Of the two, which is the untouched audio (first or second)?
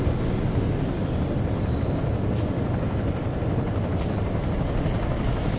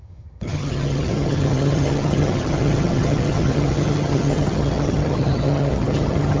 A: first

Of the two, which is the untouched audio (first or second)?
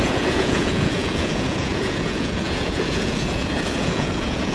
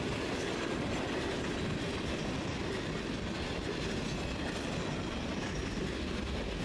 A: second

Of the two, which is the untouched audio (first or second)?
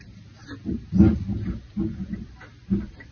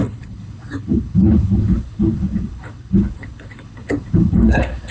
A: first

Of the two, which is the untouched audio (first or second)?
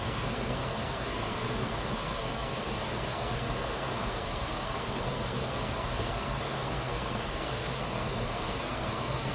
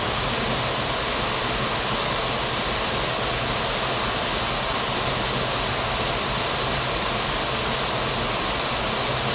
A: second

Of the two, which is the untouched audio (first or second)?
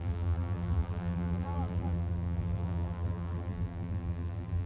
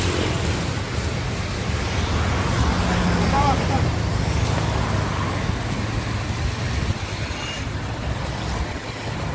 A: second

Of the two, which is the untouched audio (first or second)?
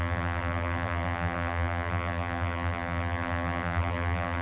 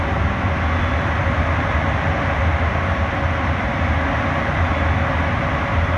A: second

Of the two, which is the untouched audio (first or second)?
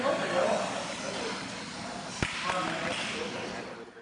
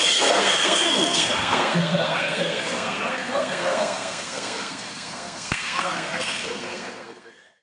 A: first